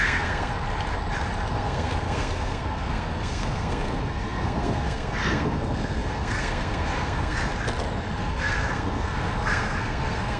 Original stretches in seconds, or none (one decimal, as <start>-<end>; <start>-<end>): 0.5-1.5; 7.5-8.2